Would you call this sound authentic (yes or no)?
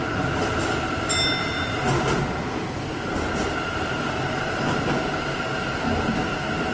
yes